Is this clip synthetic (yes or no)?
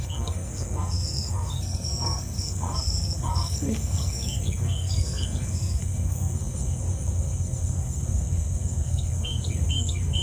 yes